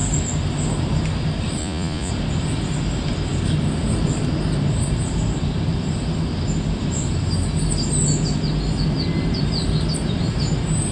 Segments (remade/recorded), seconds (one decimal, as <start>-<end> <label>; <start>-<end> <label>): 0.0-1.6 recorded; 1.6-2.1 remade; 2.1-10.9 recorded